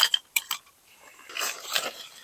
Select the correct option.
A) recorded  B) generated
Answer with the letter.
B